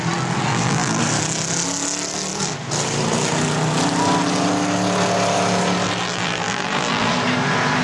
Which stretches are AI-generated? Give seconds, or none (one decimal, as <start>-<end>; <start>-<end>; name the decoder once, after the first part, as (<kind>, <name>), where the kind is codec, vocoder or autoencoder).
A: 0.5-1.0 (vocoder, BigVGAN v2); 6.0-7.1